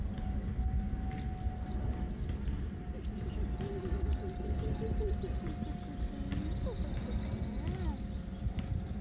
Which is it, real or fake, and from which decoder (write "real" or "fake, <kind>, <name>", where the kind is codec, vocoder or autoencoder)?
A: real